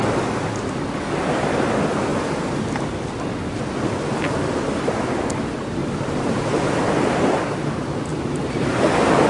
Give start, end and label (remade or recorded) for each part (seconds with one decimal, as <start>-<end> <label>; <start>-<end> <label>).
0.0-5.8 recorded; 5.8-6.8 remade; 6.8-8.1 recorded; 8.1-8.8 remade; 8.8-9.3 recorded